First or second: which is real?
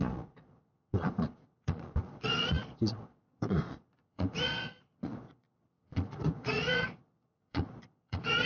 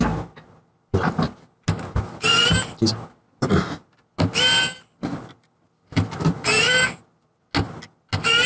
second